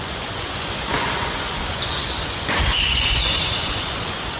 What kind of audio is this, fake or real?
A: fake